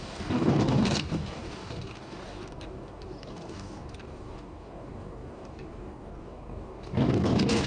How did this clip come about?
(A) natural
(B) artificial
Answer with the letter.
B